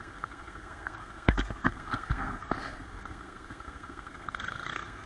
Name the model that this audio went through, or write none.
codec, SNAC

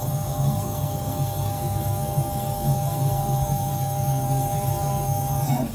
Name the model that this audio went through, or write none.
codec, SNAC